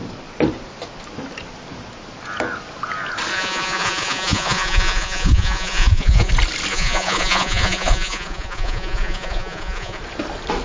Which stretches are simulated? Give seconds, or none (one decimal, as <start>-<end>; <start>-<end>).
3.3-6.3; 6.7-10.0

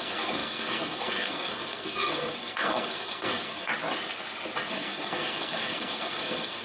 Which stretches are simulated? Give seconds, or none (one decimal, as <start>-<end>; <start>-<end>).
0.0-3.7; 4.7-6.6

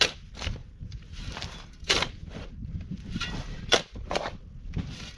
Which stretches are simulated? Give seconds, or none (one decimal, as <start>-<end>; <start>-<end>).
0.6-3.6

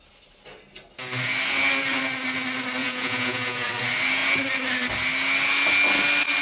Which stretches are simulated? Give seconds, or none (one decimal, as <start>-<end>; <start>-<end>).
2.8-3.7